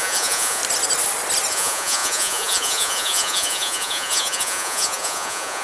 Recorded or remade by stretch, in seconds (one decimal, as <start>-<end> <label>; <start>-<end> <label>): 0.0-0.6 remade; 0.6-1.5 recorded; 1.5-5.6 remade